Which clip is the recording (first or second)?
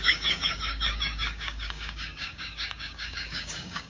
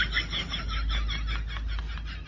second